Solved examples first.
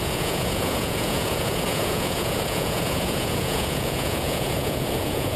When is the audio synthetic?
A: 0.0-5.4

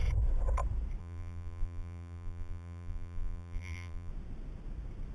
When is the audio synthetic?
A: 1.0-4.1

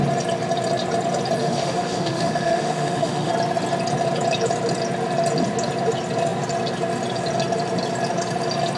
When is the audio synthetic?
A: 1.4-3.3